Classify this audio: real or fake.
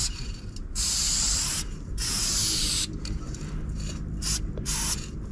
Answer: fake